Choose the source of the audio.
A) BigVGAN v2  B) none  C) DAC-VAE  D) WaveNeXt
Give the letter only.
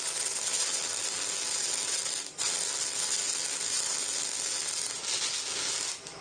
B